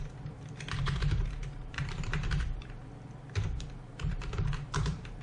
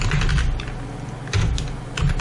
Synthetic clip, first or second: first